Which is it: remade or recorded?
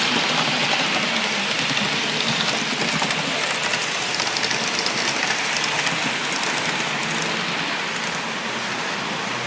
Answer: recorded